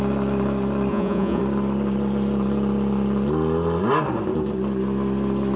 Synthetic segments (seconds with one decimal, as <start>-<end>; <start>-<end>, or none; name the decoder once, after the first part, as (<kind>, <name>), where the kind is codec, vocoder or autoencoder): 0.9-1.4 (vocoder, Vocos)